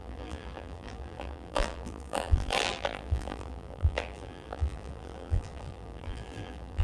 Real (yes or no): no